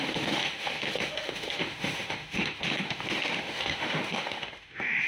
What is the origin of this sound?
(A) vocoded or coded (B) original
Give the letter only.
A